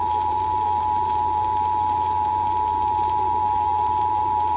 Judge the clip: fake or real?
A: fake